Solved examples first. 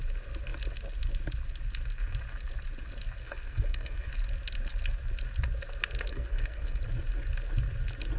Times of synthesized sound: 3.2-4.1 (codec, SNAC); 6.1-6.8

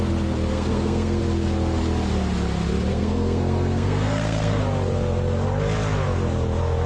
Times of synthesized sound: 0.5-1.2 (codec, SNAC); 2.9-4.6

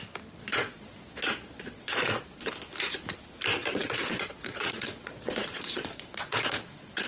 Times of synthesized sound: 0.4-2.5 (vocoder, Vocos); 3.6-7.1

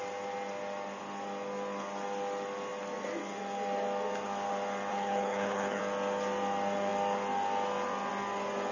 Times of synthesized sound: 4.9-5.8 (codec, HILCodec)

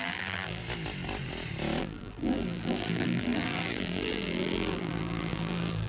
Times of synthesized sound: 0.0-0.6 (vocoder, BigVGAN v2); 1.8-5.9

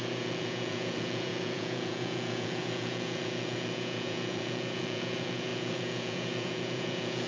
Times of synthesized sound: 0.0-7.3 (vocoder, Vocos)